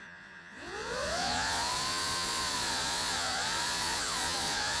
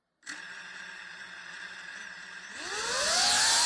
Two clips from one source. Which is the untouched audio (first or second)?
second